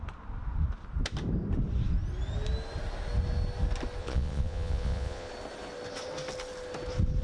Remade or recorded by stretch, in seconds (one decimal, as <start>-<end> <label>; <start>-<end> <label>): 0.0-4.0 recorded; 4.0-5.3 remade; 5.3-7.2 recorded